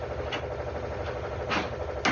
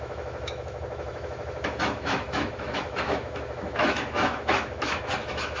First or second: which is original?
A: first